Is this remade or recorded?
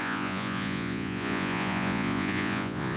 remade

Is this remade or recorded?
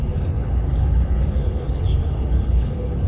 remade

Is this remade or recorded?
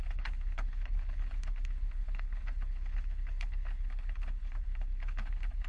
remade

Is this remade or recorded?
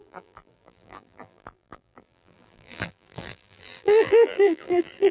remade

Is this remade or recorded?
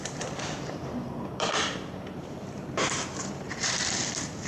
remade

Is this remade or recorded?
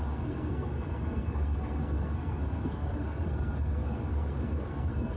remade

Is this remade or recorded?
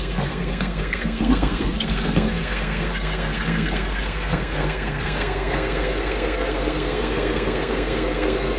remade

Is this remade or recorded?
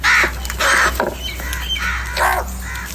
recorded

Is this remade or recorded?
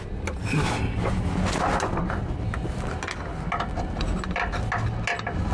recorded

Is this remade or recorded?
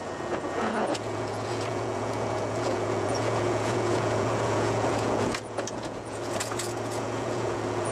remade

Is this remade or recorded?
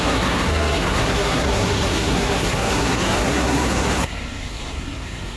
remade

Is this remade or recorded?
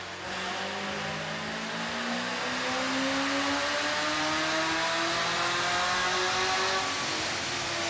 recorded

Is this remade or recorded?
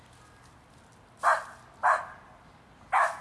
recorded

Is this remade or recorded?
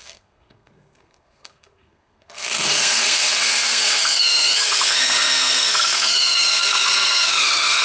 remade